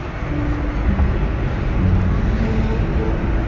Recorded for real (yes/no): yes